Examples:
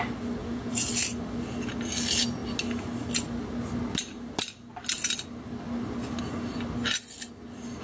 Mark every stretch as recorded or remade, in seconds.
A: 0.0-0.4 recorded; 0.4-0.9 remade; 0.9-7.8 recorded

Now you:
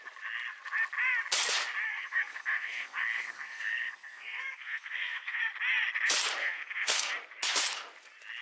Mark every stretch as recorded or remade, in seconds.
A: 0.0-1.9 recorded; 1.9-5.4 remade; 5.4-6.4 recorded; 6.4-7.1 remade; 7.1-8.4 recorded

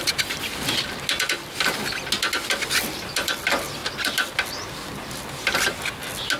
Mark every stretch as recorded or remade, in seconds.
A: 0.0-6.4 recorded

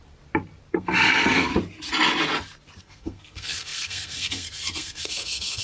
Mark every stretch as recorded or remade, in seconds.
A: 0.0-0.7 recorded; 0.7-1.5 remade; 1.5-2.8 recorded; 2.8-5.6 remade

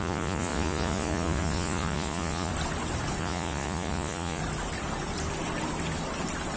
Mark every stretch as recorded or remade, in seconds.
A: 0.0-2.5 remade; 2.5-3.2 recorded; 3.2-4.4 remade; 4.4-6.6 recorded